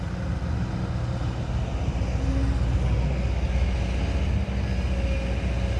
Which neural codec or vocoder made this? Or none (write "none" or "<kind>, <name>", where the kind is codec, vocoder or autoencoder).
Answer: none